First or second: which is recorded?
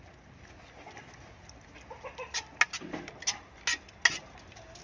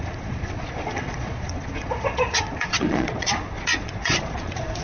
first